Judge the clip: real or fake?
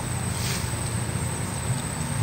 real